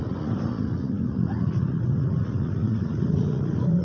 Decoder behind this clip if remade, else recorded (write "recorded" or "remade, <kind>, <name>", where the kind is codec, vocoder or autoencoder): remade, vocoder, Vocos